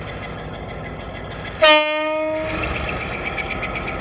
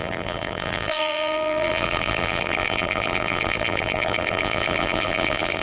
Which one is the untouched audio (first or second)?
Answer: first